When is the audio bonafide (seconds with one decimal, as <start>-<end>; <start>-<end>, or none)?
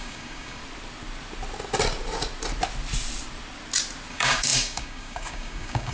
0.6-4.1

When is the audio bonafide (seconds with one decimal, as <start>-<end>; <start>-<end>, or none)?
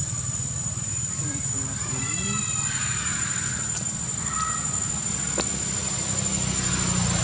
2.4-7.2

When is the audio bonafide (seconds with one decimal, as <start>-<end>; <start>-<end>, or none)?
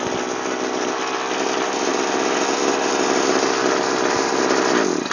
none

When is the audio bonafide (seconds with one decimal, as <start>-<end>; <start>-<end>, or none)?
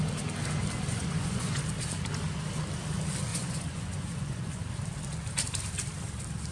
0.0-0.9; 1.6-3.3; 4.6-6.5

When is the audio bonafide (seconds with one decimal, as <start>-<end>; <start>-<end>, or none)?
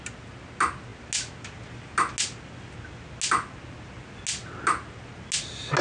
0.0-5.8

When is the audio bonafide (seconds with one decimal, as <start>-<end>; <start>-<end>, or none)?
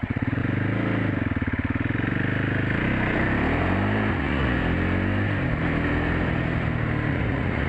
0.4-4.1; 4.6-7.1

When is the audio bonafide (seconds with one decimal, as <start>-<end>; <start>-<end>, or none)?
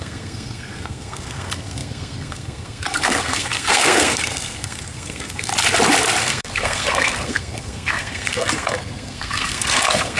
5.5-6.2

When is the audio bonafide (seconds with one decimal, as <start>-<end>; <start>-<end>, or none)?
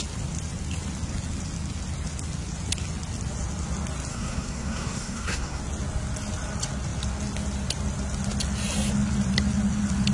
0.0-4.1; 5.6-10.1